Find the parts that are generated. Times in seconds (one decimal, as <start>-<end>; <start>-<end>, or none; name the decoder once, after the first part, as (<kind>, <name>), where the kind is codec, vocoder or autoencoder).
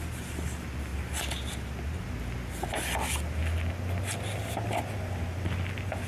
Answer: 0.0-0.9 (vocoder, BigVGAN v2); 4.3-6.1